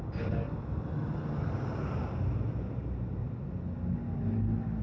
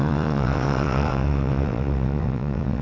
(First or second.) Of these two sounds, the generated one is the second